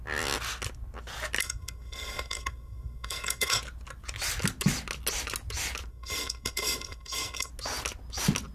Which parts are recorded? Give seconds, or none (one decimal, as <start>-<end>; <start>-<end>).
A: 0.0-1.4; 3.6-5.9; 7.5-8.5